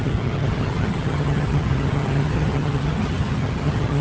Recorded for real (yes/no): no